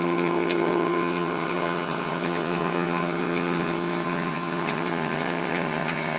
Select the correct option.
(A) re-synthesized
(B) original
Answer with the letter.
A